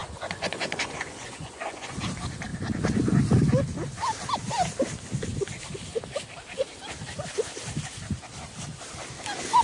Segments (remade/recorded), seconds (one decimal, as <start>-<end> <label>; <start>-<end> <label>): 0.0-2.0 remade; 2.0-9.6 recorded

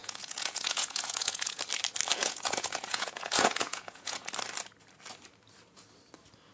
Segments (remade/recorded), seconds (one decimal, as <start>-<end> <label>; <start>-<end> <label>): 0.0-1.6 remade; 1.6-2.2 recorded; 2.2-4.3 remade; 4.3-6.5 recorded

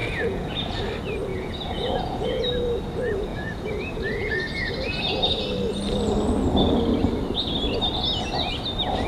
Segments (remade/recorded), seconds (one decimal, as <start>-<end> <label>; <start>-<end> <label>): 0.0-0.8 remade; 0.8-1.3 recorded; 1.3-2.4 remade; 2.4-3.3 recorded; 3.3-4.7 remade; 4.7-9.1 recorded

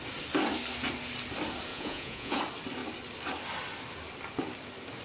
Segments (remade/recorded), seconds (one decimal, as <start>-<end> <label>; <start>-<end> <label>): 0.0-1.7 recorded; 1.7-2.4 remade; 2.4-5.0 recorded

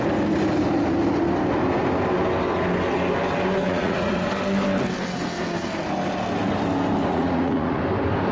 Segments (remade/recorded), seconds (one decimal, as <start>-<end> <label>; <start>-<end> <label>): 0.0-3.6 recorded; 3.6-4.3 remade; 4.3-7.1 recorded; 7.1-7.8 remade; 7.8-8.3 recorded

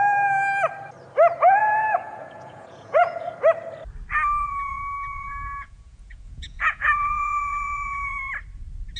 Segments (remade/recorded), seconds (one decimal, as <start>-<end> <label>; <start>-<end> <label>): 0.0-1.6 recorded; 1.6-3.3 remade; 3.3-4.4 recorded; 4.4-8.3 remade; 8.3-9.0 recorded

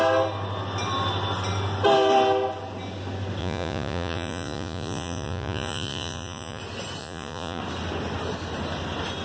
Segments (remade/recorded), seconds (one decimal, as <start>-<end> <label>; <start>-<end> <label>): 0.0-3.4 recorded; 3.4-6.6 remade; 6.6-7.0 recorded; 7.0-7.6 remade; 7.6-9.2 recorded

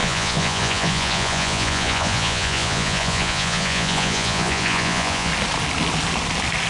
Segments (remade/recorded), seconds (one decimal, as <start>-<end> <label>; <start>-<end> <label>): 0.0-5.3 remade; 5.3-6.7 recorded